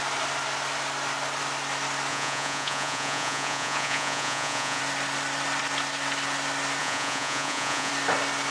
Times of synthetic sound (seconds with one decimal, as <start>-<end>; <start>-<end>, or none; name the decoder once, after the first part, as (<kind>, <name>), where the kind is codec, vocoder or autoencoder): 2.1-4.8 (vocoder, Vocos); 6.8-7.9